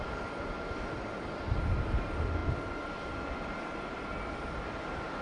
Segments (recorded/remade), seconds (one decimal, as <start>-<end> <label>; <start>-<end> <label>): 0.0-5.2 recorded